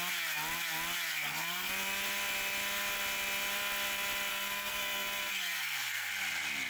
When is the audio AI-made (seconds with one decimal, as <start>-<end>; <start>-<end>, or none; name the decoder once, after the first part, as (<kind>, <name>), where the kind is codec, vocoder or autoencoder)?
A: 1.1-1.7 (codec, SNAC); 4.3-6.1